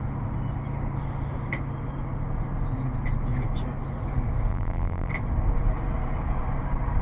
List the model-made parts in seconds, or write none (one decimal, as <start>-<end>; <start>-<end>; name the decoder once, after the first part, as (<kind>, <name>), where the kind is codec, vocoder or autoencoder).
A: 4.5-5.1 (vocoder, BigVGAN v2)